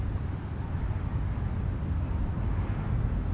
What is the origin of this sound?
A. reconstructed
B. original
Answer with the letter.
B